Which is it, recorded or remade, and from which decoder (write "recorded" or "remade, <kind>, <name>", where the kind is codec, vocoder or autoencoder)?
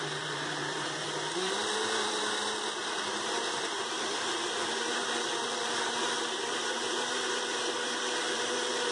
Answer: remade, vocoder, BigVGAN v2